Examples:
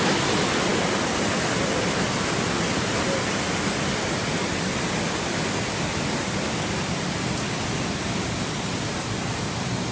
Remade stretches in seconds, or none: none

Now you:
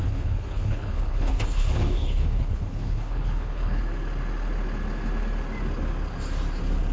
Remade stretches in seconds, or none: 0.0-3.8 (codec, HILCodec)

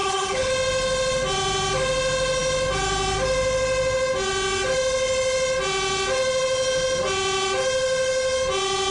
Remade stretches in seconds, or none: 0.0-0.5 (codec, HILCodec)

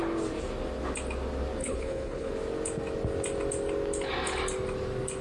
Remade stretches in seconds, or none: 1.6-2.3 (codec, HILCodec)

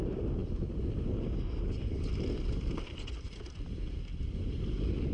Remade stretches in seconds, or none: none

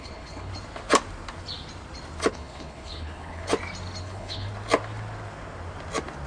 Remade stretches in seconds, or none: 0.0-0.5 (codec, HILCodec); 2.3-3.5; 4.0-4.5